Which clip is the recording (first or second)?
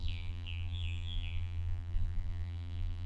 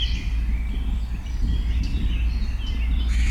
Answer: second